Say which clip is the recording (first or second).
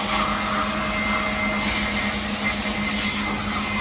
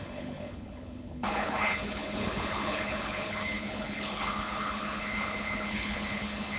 first